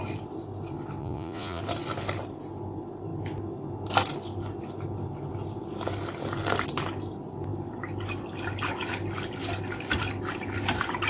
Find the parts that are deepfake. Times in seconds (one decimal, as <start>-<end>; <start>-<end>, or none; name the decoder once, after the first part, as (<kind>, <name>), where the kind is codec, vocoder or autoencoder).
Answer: 1.0-1.6 (vocoder, Vocos)